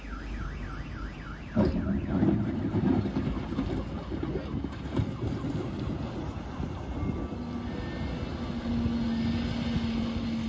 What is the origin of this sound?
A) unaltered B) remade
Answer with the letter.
A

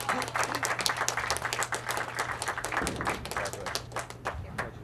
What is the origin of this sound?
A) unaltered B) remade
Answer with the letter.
A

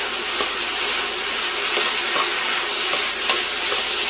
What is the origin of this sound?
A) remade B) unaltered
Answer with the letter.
B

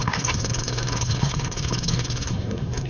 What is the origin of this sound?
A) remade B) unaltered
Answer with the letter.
A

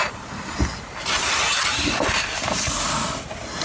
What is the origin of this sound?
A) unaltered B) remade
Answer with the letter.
B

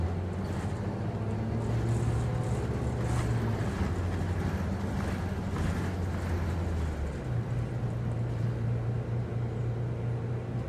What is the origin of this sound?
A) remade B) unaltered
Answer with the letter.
B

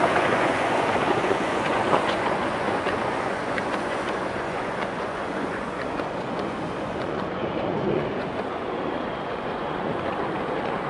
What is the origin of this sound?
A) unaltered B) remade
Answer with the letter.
B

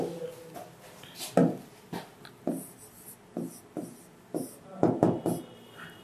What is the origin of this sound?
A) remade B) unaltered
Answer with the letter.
B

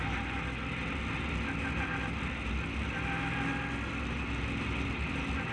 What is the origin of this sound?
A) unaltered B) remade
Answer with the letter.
A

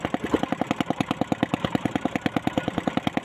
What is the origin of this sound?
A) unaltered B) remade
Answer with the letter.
A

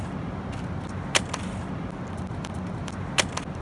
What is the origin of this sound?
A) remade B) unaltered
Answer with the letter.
B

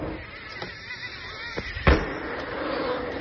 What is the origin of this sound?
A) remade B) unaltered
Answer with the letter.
B